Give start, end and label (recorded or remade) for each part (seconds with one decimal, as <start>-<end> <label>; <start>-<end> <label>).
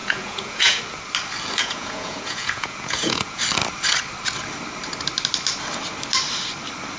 0.0-0.8 remade; 0.8-1.6 recorded; 1.6-3.4 remade; 3.4-7.0 recorded